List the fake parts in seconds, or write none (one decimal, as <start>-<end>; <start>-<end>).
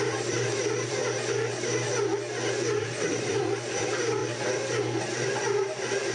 0.0-1.0; 2.8-4.2; 5.0-6.1